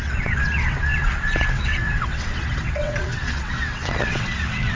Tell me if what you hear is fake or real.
fake